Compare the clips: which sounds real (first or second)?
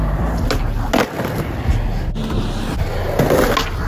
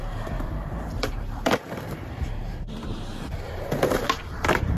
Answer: first